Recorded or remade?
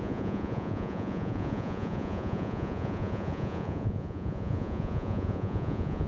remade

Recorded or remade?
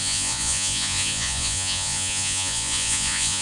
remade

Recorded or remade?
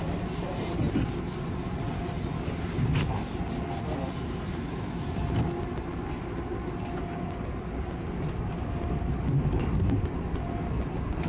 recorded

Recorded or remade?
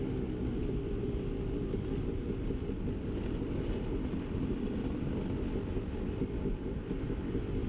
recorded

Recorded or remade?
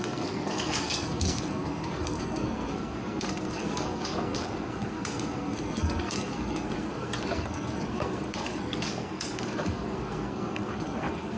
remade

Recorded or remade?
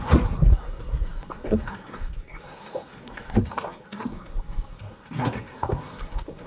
remade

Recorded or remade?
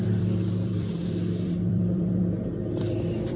remade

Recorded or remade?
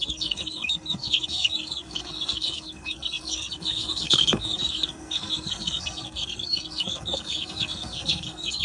remade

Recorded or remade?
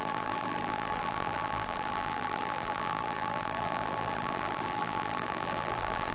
remade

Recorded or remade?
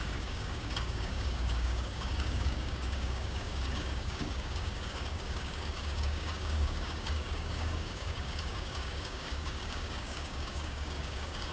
remade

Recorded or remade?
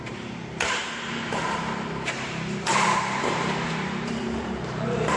remade